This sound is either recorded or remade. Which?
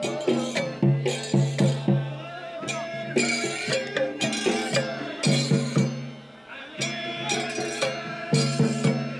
recorded